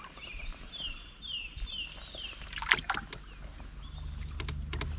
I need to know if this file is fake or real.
real